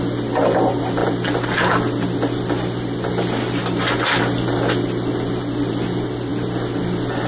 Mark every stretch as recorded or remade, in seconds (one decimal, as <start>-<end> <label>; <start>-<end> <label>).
0.0-7.3 recorded